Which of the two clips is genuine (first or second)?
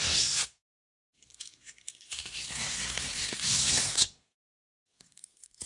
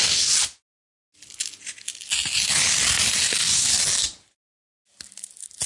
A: second